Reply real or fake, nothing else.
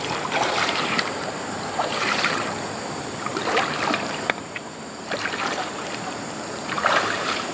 fake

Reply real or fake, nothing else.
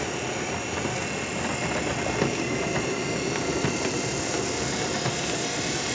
real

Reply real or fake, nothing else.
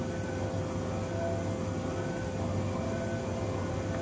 real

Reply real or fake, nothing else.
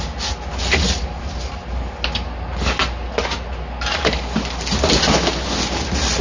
real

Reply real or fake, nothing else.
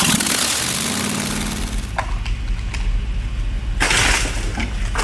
real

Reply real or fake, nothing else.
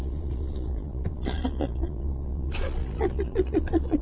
fake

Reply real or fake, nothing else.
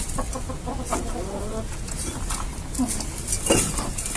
real